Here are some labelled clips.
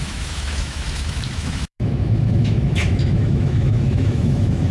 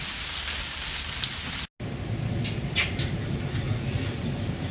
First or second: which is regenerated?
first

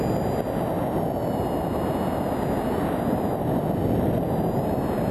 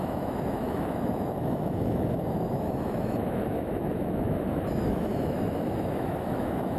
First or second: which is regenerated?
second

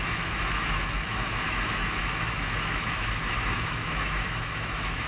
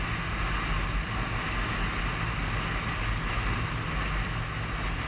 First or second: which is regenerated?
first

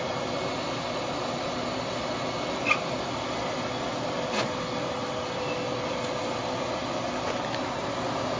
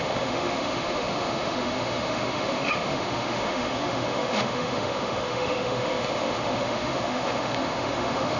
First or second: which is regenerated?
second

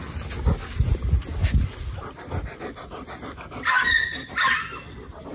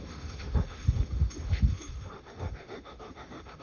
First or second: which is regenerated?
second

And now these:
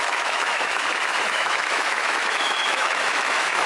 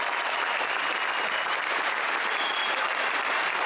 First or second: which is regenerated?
first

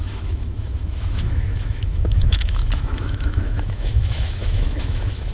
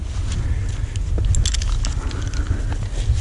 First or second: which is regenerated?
first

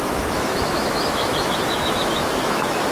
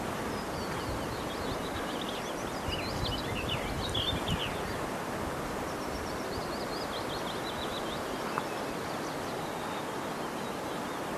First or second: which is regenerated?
first